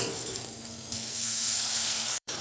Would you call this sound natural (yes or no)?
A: no